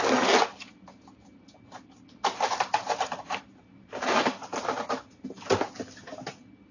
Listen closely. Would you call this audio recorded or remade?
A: recorded